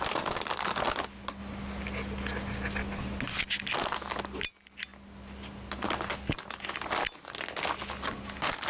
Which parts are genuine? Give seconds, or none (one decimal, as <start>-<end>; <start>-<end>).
0.0-8.7